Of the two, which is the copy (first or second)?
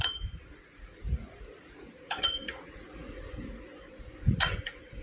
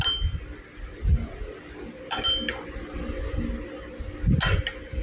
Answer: first